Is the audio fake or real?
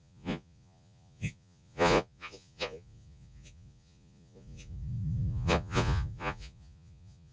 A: fake